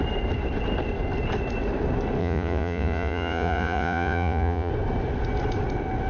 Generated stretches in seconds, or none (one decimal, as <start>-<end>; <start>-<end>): 2.2-4.7